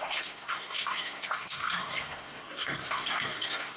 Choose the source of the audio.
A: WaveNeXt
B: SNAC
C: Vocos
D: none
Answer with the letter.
B